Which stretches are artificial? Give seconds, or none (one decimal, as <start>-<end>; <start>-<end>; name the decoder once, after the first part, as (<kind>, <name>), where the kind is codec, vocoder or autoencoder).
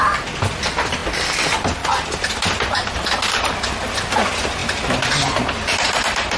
none